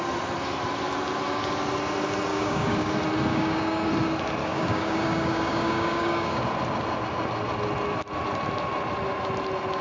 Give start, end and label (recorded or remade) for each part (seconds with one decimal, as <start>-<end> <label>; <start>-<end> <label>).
0.0-2.3 recorded; 2.3-2.9 remade; 2.9-3.3 recorded; 3.3-3.9 remade; 3.9-4.4 recorded; 4.4-6.4 remade; 6.4-9.8 recorded